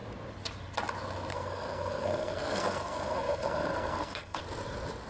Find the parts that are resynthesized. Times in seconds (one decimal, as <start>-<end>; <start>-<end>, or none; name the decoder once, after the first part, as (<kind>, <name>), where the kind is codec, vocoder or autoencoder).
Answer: 1.3-4.4 (codec, SNAC)